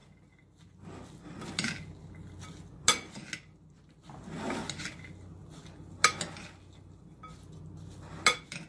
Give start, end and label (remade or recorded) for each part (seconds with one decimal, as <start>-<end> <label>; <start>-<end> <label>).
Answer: 0.0-8.7 recorded